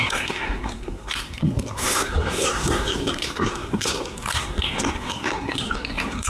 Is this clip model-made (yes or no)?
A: yes